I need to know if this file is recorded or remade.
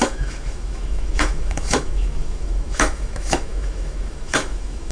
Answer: remade